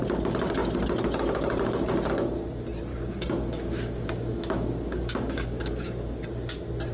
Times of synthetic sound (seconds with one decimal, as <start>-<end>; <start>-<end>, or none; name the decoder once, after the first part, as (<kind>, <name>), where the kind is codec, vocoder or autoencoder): 2.9-6.2 (codec, DAC)